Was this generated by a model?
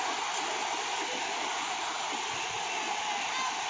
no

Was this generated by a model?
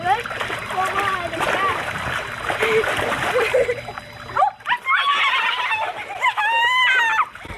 no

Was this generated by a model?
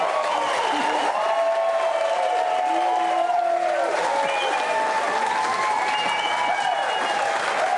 no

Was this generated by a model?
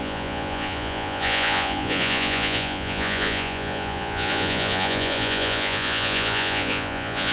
yes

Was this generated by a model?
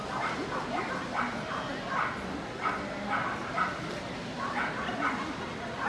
no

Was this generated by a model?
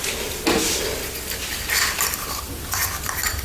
no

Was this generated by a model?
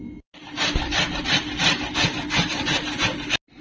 no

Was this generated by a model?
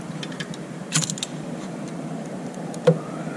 yes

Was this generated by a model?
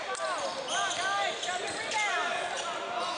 no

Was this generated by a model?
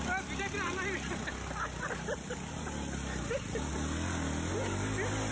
no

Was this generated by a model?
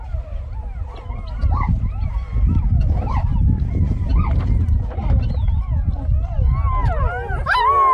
no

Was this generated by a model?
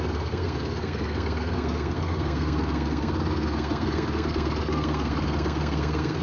yes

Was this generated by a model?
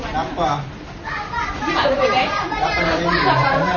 yes